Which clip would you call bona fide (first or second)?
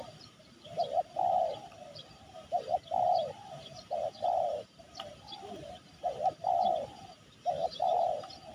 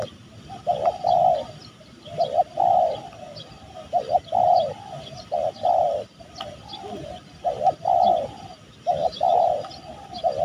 second